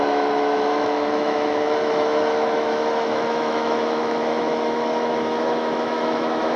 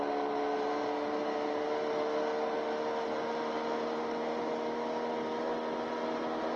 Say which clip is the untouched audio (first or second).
second